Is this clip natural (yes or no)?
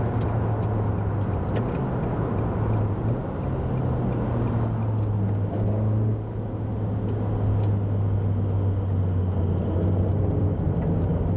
yes